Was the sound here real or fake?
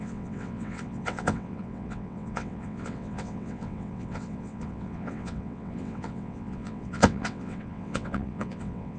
fake